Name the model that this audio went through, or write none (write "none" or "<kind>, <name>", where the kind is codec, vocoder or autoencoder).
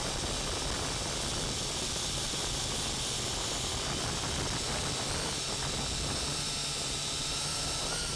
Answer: none